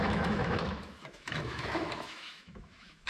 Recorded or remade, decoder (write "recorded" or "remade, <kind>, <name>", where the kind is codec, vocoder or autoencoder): remade, autoencoder, DAC-VAE